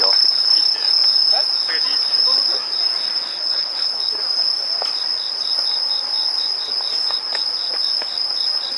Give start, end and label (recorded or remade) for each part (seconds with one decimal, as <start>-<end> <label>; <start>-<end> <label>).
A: 0.0-3.3 recorded; 3.3-4.1 remade; 4.1-8.8 recorded